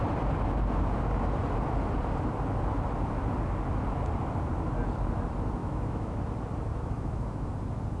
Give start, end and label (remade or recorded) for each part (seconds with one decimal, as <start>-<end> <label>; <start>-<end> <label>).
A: 0.0-5.6 recorded; 5.6-6.2 remade; 6.2-6.7 recorded; 6.7-7.5 remade; 7.5-8.0 recorded